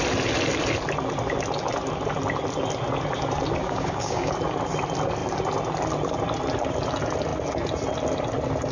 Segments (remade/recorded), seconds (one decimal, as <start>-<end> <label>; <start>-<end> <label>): 0.0-3.6 recorded; 3.6-4.3 remade; 4.3-8.7 recorded